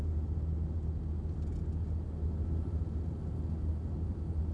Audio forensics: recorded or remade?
recorded